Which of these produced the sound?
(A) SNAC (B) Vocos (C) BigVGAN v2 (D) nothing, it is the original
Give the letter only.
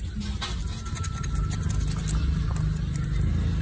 D